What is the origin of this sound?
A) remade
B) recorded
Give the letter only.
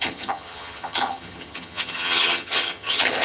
A